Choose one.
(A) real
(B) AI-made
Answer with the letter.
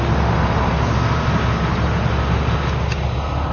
A